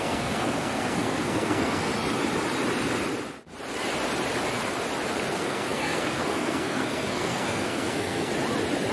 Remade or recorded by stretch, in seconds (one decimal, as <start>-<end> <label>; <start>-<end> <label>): 0.0-1.9 remade; 1.9-5.3 recorded; 5.3-8.3 remade; 8.3-8.9 recorded

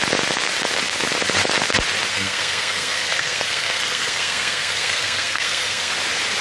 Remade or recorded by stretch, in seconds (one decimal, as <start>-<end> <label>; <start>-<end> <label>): 0.0-2.1 recorded; 2.1-5.9 remade; 5.9-6.4 recorded

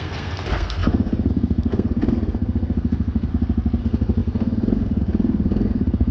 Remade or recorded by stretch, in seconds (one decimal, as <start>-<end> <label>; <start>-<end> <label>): 0.0-3.3 remade; 3.3-3.8 recorded; 3.8-6.1 remade

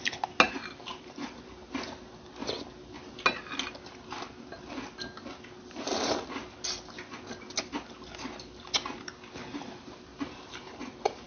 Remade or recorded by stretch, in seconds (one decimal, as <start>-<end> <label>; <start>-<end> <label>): 0.0-0.9 recorded; 0.9-1.8 remade; 1.8-10.1 recorded; 10.1-11.3 remade

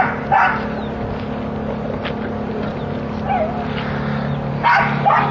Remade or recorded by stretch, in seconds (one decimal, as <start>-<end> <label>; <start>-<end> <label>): 0.0-5.3 recorded

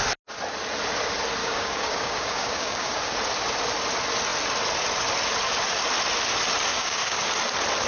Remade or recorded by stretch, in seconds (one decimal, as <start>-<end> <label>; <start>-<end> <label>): 0.0-1.4 recorded; 1.4-3.1 remade; 3.1-6.7 recorded; 6.7-7.3 remade; 7.3-7.9 recorded